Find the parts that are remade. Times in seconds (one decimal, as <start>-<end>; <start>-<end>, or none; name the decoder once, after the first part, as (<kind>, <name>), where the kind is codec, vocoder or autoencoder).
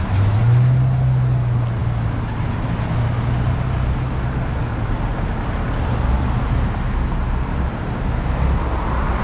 none